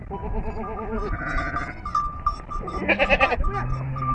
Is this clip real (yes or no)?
yes